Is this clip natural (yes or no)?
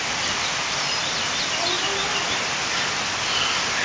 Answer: yes